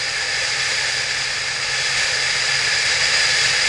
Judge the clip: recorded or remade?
recorded